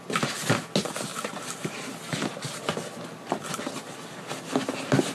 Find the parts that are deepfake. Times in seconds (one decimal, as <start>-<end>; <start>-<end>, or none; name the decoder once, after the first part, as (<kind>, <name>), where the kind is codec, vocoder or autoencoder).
none